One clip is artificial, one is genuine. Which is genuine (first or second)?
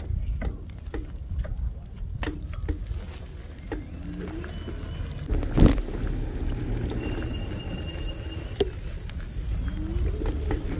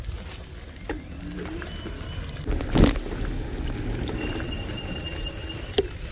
first